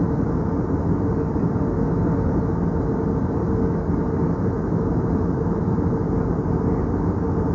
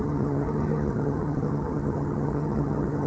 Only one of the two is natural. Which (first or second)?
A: first